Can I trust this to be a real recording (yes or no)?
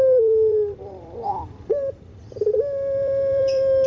no